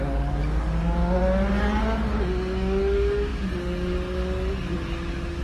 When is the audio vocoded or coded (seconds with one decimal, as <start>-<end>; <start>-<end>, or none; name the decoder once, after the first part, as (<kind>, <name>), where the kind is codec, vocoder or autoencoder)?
0.0-1.0 (codec, DAC); 1.8-5.4